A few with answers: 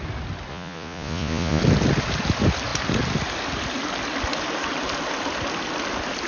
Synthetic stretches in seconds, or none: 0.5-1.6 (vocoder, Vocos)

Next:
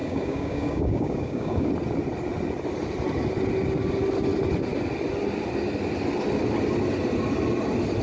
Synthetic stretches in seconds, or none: 0.0-1.7 (codec, DAC)